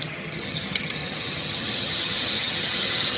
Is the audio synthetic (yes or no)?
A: yes